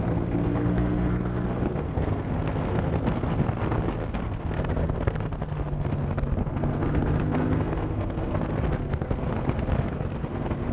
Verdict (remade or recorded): remade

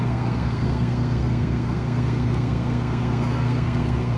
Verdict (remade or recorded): remade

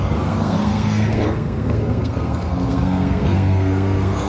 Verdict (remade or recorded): remade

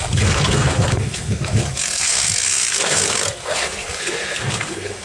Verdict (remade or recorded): remade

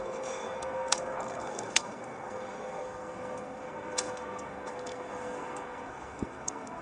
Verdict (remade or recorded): remade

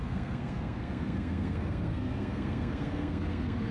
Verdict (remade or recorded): remade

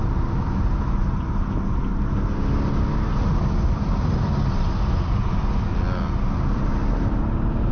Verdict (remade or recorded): recorded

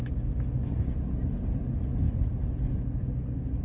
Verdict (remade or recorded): recorded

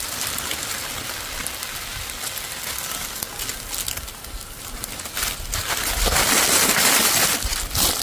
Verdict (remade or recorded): recorded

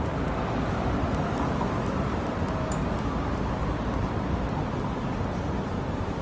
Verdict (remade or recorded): recorded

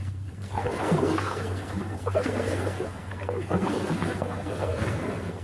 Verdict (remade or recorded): remade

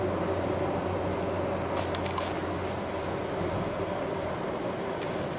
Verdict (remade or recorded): recorded